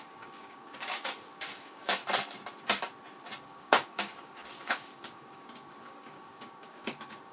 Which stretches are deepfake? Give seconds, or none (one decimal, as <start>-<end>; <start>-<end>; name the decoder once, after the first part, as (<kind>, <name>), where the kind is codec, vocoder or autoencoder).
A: 0.0-2.0 (codec, DAC); 3.4-7.3